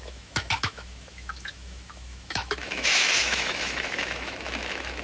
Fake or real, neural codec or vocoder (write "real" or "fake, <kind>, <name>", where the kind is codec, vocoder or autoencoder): fake, autoencoder, DAC-VAE